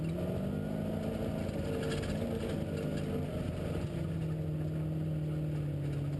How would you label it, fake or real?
real